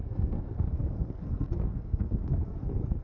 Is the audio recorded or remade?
remade